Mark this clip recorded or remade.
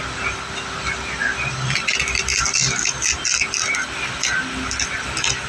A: recorded